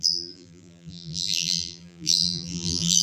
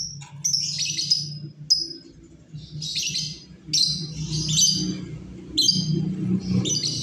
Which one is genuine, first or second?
second